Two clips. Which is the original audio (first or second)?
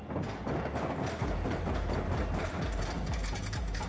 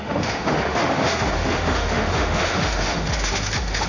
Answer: first